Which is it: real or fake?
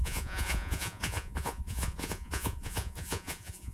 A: fake